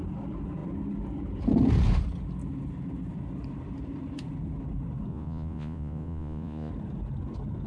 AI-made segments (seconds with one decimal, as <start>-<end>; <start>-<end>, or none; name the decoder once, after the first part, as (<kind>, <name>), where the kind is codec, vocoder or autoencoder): 5.1-6.7 (vocoder, Vocos)